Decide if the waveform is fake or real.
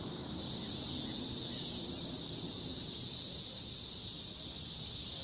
real